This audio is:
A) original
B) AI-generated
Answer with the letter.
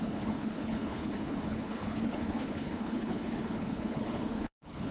B